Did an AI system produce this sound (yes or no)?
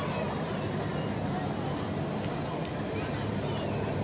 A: no